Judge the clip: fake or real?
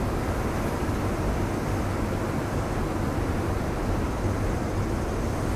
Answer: real